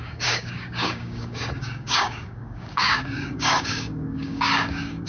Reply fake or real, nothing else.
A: fake